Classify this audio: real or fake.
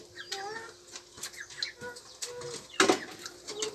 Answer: real